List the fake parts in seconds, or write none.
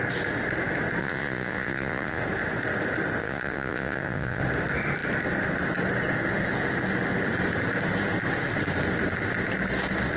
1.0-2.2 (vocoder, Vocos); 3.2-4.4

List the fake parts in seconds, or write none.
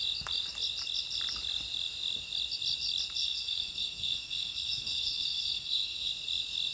3.2-6.1 (codec, SNAC)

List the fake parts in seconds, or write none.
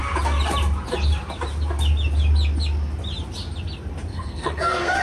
4.1-5.0 (codec, SNAC)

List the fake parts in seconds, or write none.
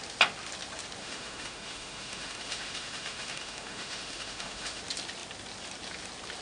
1.0-4.8 (autoencoder, DAC-VAE)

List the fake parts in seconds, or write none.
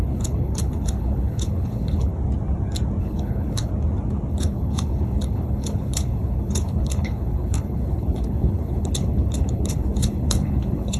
0.0-2.1 (codec, HILCodec); 3.0-3.7; 4.3-11.0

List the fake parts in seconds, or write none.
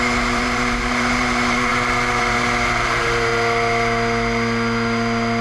0.0-3.3 (vocoder, BigVGAN v2)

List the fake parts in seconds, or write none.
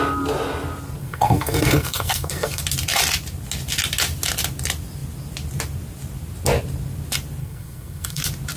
1.0-2.6 (codec, SNAC); 7.4-8.2